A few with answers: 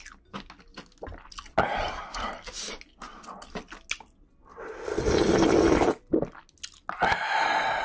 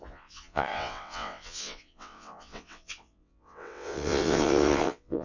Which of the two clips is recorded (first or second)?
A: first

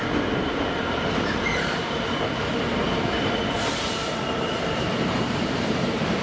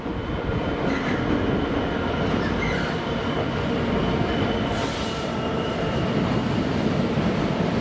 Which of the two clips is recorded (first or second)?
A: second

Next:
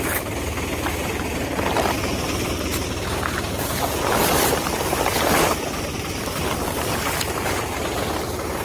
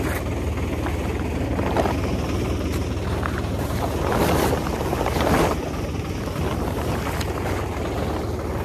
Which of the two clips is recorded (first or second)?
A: second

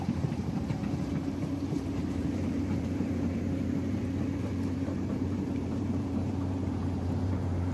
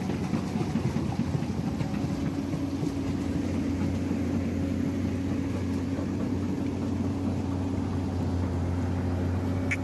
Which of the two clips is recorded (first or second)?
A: second